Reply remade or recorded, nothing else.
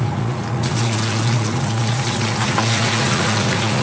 remade